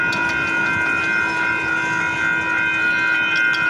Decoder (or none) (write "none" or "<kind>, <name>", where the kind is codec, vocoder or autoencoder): none